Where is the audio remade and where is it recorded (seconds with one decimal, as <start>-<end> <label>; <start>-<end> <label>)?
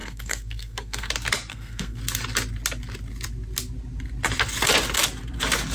0.0-1.1 remade; 1.1-1.5 recorded; 1.5-2.0 remade; 2.0-5.7 recorded